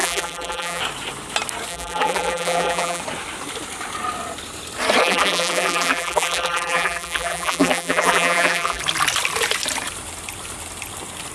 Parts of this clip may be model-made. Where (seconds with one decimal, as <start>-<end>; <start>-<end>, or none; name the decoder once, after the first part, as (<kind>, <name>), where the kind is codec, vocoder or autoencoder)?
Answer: 0.0-0.8 (vocoder, BigVGAN v2); 1.7-3.0; 5.0-8.8